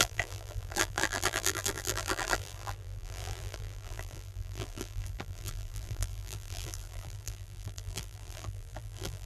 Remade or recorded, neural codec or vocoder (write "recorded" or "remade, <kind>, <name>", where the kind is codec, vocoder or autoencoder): remade, vocoder, BigVGAN v2